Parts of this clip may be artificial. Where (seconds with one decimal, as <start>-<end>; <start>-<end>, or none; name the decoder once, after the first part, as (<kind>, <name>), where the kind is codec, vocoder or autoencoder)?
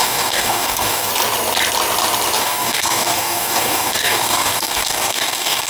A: 0.0-1.1 (codec, DAC); 2.4-5.7